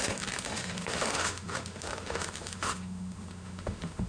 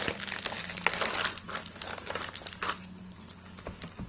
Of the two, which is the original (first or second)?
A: second